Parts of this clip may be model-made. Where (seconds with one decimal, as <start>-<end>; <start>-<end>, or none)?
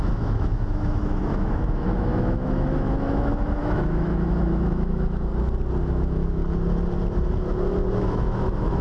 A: 0.0-5.3; 5.8-6.4; 7.9-8.8